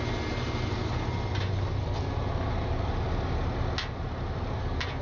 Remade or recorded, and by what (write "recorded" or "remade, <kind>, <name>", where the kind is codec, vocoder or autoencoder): recorded